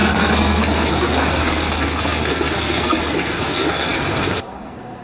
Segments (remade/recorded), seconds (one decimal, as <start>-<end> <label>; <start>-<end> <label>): 0.0-5.0 remade